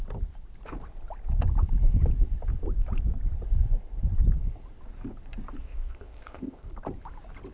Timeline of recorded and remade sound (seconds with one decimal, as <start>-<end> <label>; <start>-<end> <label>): 0.0-5.6 recorded; 5.6-6.7 remade; 6.7-7.5 recorded